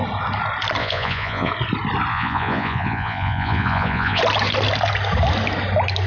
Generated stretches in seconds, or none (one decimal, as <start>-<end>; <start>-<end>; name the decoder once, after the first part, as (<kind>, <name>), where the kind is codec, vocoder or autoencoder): 0.8-1.5 (vocoder, Vocos); 2.1-4.2